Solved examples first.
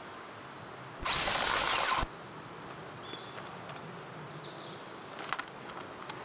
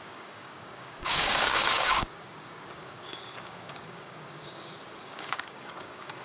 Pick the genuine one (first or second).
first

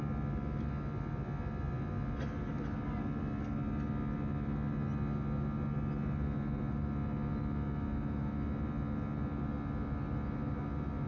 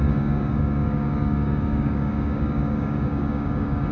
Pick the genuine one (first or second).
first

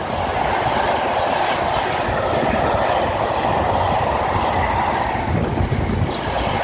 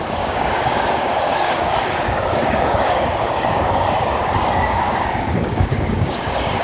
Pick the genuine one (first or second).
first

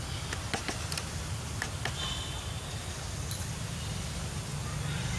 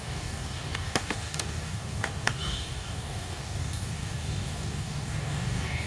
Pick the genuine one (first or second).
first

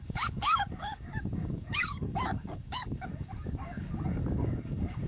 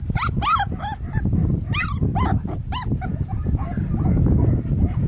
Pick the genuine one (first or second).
second